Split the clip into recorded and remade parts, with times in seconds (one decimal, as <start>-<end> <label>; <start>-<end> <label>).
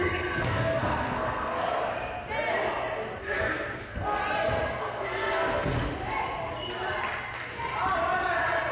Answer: 0.0-1.8 remade; 1.8-3.2 recorded; 3.2-4.2 remade; 4.2-4.8 recorded; 4.8-5.7 remade; 5.7-8.7 recorded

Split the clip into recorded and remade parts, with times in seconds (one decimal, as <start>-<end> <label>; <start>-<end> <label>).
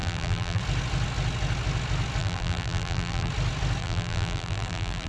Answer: 0.0-0.6 remade; 0.6-2.2 recorded; 2.2-3.3 remade; 3.3-3.8 recorded; 3.8-5.1 remade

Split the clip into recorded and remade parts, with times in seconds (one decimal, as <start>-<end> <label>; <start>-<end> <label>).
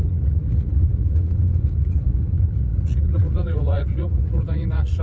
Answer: 0.0-5.0 remade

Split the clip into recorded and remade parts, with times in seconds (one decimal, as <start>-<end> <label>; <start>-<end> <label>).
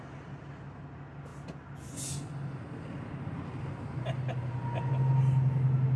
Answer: 0.0-6.0 recorded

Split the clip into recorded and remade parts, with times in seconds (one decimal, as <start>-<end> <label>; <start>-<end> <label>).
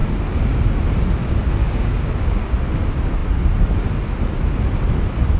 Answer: 0.0-1.6 recorded; 1.6-2.5 remade; 2.5-5.4 recorded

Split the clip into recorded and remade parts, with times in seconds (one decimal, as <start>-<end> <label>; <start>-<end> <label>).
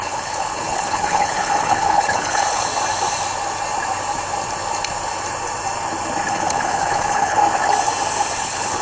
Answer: 0.0-2.7 remade; 2.7-6.3 recorded; 6.3-7.4 remade; 7.4-8.4 recorded; 8.4-8.8 remade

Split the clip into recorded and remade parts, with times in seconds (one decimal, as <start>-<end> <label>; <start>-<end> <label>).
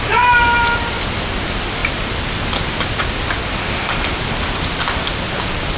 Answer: 0.0-5.8 recorded